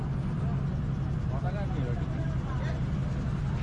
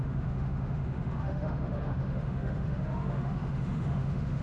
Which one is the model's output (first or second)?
second